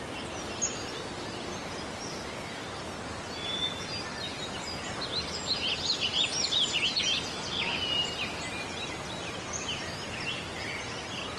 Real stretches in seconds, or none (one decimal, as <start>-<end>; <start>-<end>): 0.0-11.4